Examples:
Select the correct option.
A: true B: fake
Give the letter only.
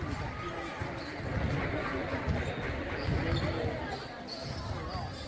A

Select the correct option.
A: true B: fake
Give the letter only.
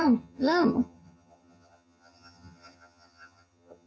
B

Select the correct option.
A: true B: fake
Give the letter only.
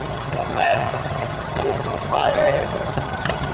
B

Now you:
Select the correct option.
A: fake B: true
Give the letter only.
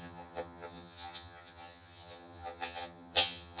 A